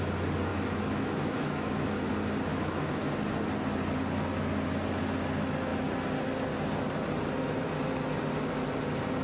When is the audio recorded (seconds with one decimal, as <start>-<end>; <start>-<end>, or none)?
0.0-0.5; 2.1-2.5; 3.1-9.2